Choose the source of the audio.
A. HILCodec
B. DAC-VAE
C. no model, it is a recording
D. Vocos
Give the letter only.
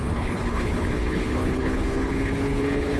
A